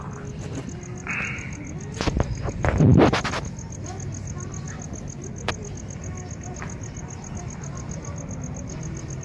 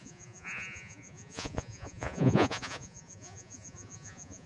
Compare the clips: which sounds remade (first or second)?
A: second